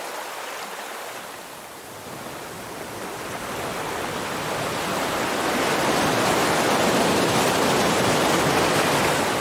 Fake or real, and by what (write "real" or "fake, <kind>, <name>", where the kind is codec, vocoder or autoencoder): real